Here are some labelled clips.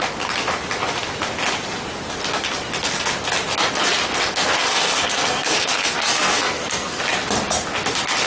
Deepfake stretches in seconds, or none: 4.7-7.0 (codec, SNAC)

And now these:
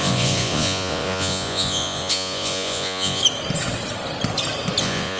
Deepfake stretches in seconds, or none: 0.0-3.2 (vocoder, Vocos); 4.8-5.2

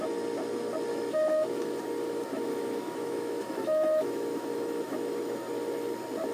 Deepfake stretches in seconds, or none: 0.9-1.8 (autoencoder, DAC-VAE); 2.5-5.4

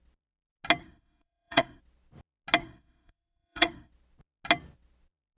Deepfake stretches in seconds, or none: 0.8-1.8 (codec, SNAC); 2.6-3.9

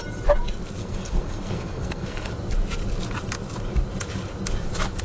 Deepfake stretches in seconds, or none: 0.8-2.3 (codec, SNAC)

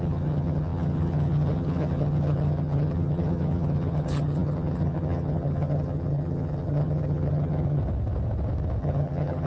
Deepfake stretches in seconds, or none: 0.0-7.8 (vocoder, HiFi-GAN); 8.8-9.5